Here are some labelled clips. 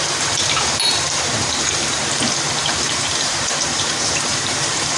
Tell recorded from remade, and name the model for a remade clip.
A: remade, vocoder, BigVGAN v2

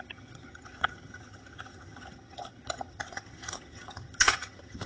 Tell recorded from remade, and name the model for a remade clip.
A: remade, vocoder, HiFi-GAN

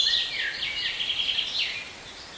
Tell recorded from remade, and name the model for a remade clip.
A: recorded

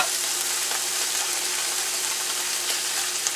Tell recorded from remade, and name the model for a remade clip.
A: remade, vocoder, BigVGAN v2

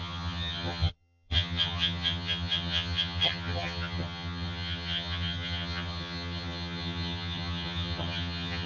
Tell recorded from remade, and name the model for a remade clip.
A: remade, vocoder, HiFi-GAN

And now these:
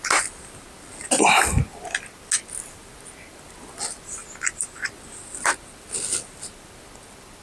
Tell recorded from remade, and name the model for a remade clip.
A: recorded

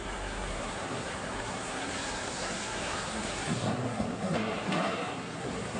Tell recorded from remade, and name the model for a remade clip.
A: remade, codec, SNAC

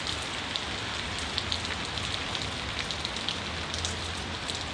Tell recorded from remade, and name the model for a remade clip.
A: recorded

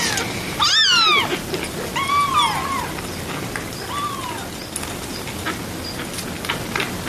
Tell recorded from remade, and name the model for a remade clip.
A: recorded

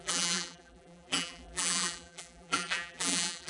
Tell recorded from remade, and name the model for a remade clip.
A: remade, vocoder, BigVGAN v2